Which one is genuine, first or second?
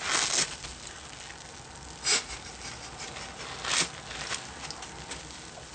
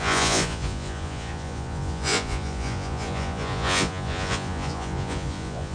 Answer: first